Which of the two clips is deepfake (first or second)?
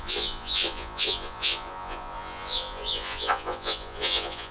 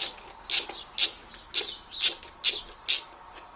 first